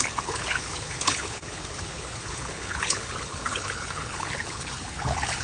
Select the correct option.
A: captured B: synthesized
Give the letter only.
B